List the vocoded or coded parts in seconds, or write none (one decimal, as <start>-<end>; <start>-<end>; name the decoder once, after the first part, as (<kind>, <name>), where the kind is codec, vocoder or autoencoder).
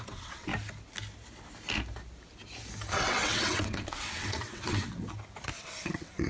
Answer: 0.0-0.5 (vocoder, WaveNeXt); 2.9-4.9; 5.6-6.3